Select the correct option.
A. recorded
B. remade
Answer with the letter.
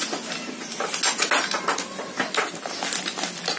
A